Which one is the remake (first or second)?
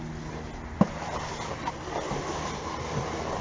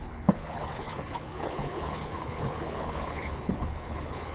second